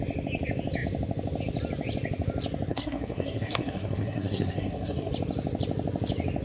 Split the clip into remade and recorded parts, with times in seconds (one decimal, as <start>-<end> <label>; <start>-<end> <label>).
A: 0.0-2.7 recorded; 2.7-5.1 remade; 5.1-6.4 recorded